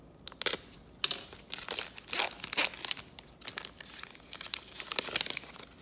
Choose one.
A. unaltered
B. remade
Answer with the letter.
A